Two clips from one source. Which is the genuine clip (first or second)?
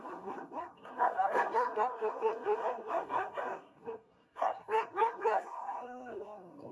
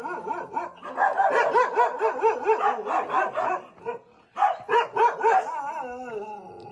second